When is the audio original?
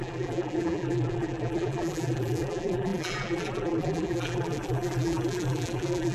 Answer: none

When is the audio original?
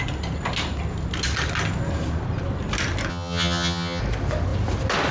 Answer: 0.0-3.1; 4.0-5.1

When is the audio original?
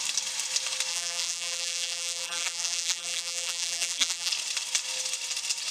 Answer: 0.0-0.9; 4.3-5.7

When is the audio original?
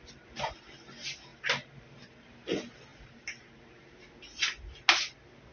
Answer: 0.0-2.9; 4.1-5.5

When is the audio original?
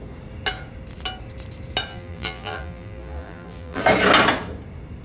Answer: 0.0-1.9; 3.8-5.0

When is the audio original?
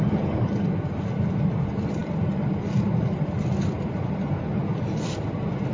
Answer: 0.0-5.7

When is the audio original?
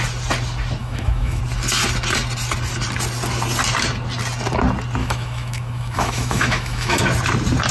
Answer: 0.0-0.8; 1.4-5.0; 7.0-7.7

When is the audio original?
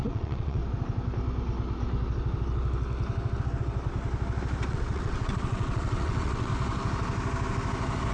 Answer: 0.6-4.7; 6.5-8.1